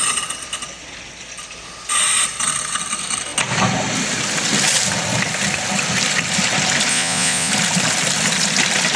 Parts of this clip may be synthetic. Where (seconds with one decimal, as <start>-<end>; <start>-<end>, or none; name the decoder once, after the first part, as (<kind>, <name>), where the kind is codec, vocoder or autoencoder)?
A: 6.9-7.5 (vocoder, Vocos)